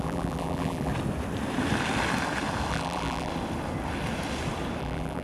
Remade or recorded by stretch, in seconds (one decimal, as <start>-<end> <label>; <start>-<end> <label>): 0.0-0.9 remade; 0.9-2.7 recorded; 2.7-3.3 remade; 3.3-4.8 recorded; 4.8-5.2 remade